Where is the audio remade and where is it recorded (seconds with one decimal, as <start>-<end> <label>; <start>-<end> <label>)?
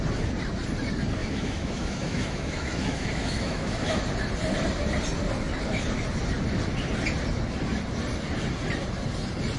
0.0-1.2 recorded; 1.2-4.0 remade; 4.0-9.6 recorded